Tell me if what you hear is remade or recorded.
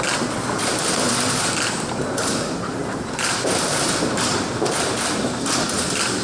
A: recorded